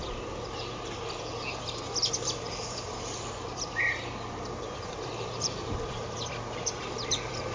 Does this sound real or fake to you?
fake